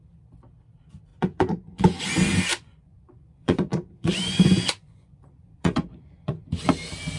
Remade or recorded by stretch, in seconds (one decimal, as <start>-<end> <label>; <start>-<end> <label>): 0.0-1.1 recorded; 1.1-2.0 remade; 2.0-2.5 recorded; 2.5-6.7 remade; 6.7-7.2 recorded